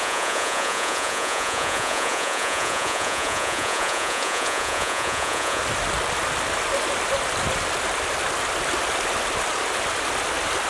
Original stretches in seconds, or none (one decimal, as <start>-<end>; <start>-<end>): 5.6-10.7

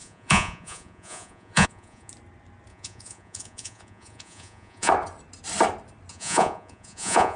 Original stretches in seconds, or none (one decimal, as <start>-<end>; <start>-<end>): 2.1-2.7; 4.9-6.1